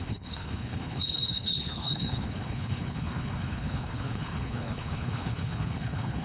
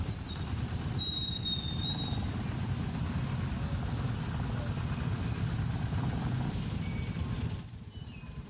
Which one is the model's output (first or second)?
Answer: first